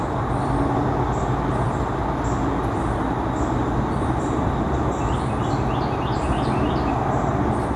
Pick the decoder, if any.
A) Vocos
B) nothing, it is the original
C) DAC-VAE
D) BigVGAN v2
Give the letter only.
B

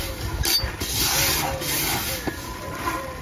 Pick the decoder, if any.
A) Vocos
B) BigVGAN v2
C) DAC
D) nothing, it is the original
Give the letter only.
D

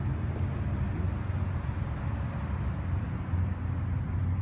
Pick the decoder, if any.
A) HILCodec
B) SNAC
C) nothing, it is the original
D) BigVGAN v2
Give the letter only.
C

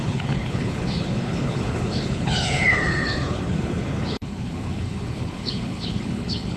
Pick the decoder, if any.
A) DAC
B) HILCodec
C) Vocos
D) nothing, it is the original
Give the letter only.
B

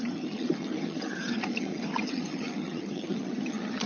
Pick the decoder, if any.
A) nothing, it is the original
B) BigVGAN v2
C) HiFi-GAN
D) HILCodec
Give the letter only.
C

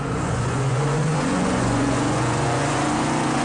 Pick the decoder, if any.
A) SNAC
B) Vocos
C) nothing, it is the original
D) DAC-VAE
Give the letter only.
B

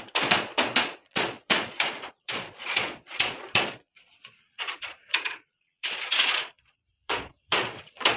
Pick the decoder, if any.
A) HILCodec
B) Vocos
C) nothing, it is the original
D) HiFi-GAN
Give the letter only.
B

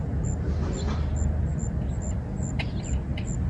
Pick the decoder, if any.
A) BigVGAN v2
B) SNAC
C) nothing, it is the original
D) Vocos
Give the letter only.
C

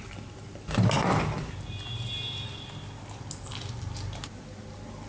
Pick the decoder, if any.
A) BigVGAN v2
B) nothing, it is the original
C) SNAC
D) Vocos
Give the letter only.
B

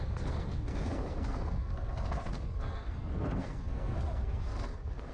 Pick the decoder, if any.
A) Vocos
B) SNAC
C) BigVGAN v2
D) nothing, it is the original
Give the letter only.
B